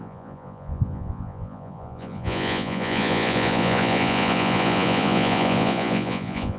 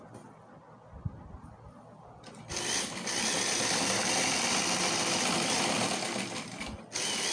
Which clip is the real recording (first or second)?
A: second